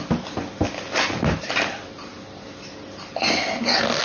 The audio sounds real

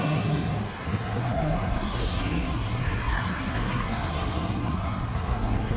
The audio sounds fake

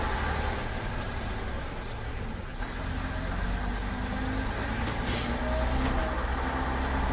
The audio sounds real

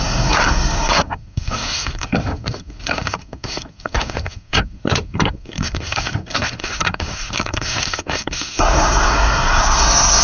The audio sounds fake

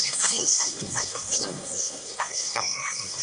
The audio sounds fake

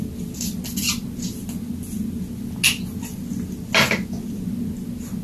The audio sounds real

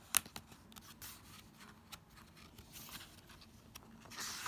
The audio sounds real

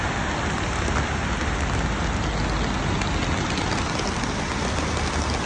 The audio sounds real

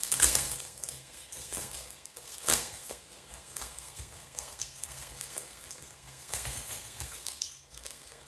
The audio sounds fake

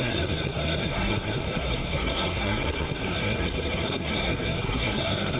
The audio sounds fake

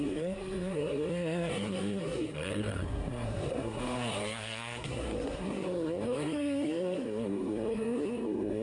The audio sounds fake